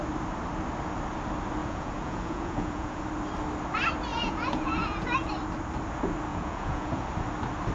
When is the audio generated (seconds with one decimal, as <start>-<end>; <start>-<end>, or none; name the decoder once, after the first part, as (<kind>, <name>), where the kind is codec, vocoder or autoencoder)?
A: 1.6-3.0 (vocoder, Vocos); 4.1-5.3; 6.3-7.1